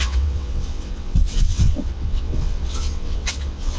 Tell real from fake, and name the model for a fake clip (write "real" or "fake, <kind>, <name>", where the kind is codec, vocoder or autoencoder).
fake, vocoder, WaveNeXt